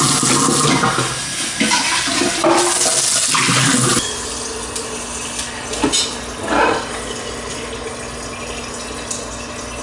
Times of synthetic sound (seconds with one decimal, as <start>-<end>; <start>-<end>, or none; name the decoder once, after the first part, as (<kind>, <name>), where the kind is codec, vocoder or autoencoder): none